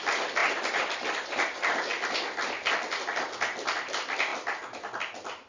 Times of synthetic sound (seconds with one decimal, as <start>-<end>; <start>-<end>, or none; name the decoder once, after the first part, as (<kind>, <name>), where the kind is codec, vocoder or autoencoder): none